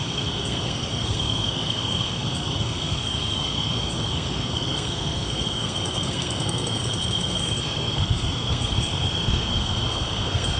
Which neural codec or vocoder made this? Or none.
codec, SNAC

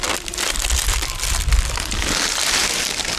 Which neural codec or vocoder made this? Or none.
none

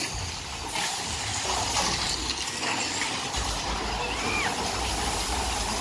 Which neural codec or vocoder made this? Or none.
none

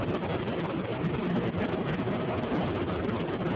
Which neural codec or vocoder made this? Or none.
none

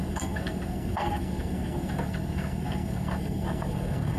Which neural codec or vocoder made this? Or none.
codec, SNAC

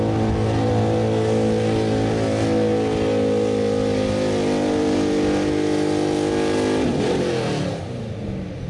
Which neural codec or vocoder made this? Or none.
none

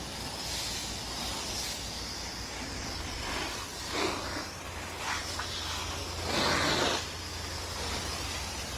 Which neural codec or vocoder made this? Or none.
none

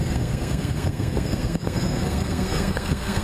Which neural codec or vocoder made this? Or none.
codec, SNAC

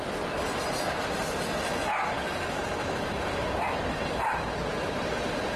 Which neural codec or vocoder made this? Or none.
none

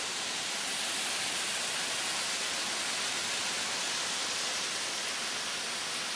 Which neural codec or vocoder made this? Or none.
none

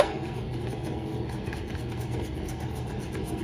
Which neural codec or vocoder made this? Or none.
codec, SNAC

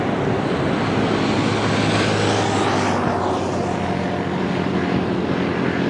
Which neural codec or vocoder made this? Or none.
none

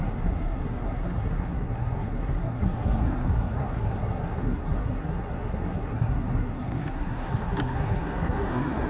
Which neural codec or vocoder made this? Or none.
codec, SNAC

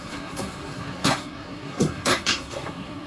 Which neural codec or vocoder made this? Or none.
codec, SNAC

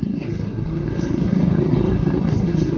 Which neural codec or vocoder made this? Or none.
codec, SNAC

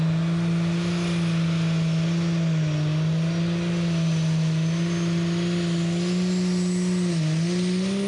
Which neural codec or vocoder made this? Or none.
none